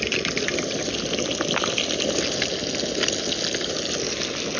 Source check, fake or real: real